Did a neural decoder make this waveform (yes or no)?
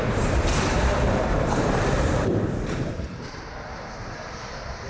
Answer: yes